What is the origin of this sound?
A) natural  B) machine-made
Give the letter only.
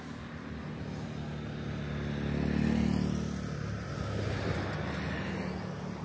A